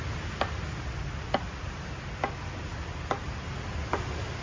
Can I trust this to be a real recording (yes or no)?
yes